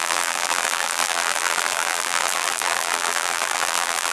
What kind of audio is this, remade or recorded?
remade